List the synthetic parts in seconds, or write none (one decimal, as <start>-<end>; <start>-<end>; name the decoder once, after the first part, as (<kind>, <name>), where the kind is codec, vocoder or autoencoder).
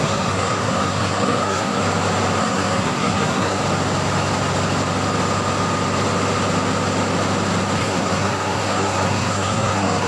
0.0-1.8 (codec, SNAC); 2.4-3.6; 7.8-10.1